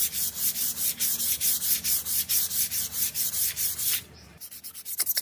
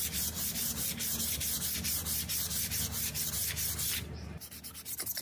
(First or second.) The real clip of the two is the second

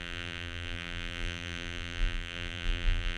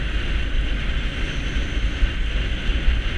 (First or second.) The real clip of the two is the second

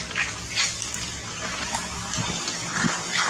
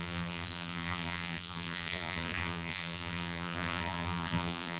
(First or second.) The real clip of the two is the first